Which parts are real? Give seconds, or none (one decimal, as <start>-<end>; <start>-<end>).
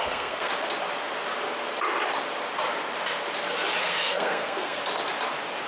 0.5-3.8; 4.8-5.7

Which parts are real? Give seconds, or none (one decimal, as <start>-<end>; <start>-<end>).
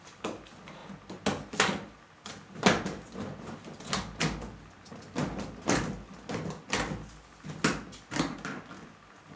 0.0-9.4